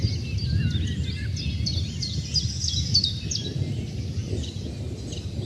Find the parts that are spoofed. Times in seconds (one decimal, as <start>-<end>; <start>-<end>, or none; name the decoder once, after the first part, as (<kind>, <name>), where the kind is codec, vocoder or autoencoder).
none